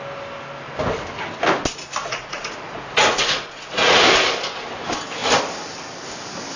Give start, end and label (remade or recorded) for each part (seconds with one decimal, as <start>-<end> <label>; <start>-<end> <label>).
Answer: 0.0-2.0 recorded; 2.0-4.0 remade; 4.0-6.6 recorded